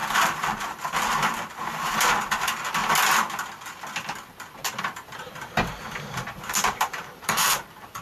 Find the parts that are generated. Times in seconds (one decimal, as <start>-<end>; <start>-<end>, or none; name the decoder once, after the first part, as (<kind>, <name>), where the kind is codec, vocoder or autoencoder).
0.0-2.8 (vocoder, BigVGAN v2); 4.8-8.0

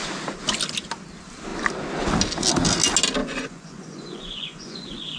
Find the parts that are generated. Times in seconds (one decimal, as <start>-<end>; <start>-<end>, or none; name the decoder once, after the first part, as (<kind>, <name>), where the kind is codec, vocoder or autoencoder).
3.2-5.2 (vocoder, Vocos)